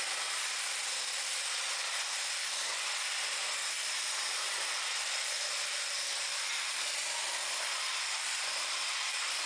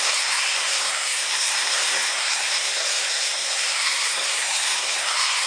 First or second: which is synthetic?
second